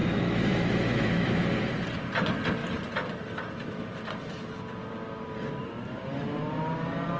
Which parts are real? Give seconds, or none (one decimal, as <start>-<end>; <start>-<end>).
1.7-7.2